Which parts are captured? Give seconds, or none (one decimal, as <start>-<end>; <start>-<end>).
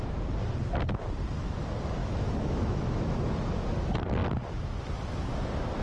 0.0-2.0; 3.2-5.8